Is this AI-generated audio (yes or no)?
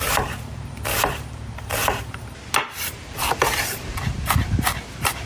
yes